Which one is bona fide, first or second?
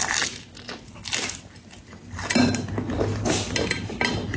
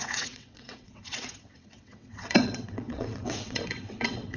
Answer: first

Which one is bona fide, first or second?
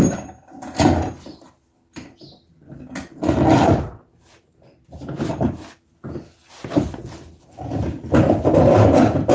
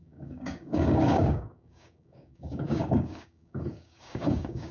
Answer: first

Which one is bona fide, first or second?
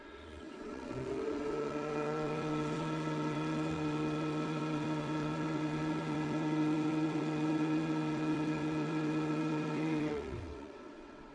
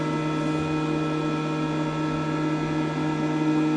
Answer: second